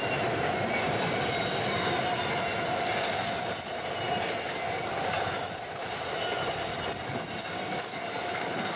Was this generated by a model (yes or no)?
no